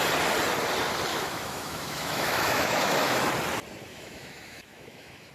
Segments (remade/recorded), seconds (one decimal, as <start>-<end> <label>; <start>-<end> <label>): 0.0-1.1 recorded; 1.1-3.3 remade; 3.3-3.9 recorded; 3.9-5.3 remade